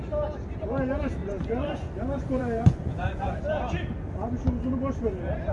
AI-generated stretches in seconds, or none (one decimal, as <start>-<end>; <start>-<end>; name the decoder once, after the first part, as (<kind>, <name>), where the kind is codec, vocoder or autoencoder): 1.2-3.4 (vocoder, Vocos)